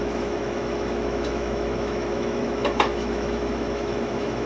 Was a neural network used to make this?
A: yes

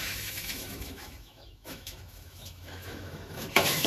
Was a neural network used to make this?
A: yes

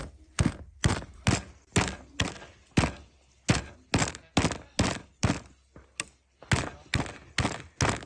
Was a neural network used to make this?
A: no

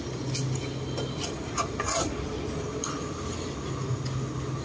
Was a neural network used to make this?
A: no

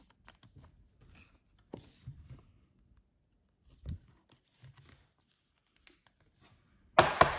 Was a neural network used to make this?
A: no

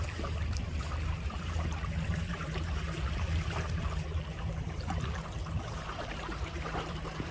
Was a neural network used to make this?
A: yes